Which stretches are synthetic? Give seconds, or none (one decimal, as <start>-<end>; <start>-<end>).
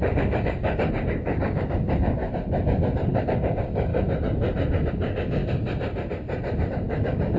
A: 0.0-2.2; 3.2-3.9; 4.9-5.4; 6.7-7.4